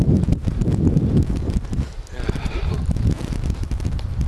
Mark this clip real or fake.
fake